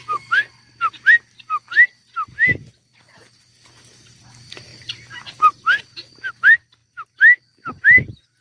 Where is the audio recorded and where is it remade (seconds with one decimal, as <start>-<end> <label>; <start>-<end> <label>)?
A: 0.0-8.4 recorded